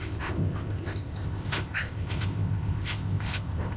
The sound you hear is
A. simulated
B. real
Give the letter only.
A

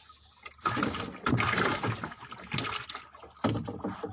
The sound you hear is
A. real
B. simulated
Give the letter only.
A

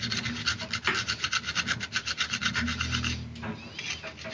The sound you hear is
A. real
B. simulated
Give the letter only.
A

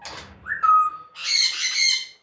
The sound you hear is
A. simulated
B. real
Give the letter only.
B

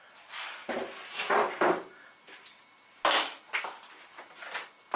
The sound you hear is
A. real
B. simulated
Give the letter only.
A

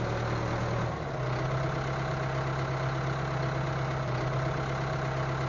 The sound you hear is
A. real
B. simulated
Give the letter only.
A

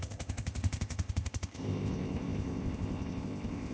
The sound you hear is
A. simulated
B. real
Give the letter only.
A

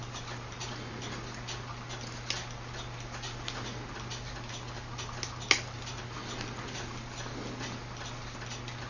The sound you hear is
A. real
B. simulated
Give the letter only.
A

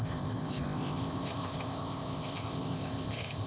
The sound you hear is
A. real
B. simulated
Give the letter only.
B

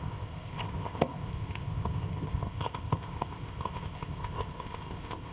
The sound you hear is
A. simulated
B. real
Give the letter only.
A